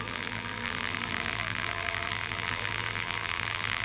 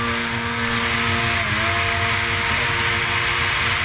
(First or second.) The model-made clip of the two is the first